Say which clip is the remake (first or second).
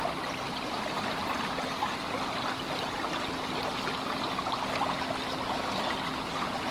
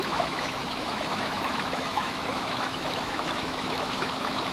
second